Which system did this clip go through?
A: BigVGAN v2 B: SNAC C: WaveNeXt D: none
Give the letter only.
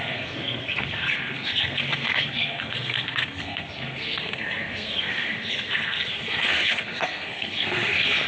B